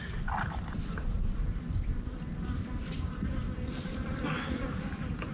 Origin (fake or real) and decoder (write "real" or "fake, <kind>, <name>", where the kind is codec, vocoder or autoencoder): real